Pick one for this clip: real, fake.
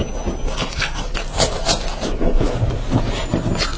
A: real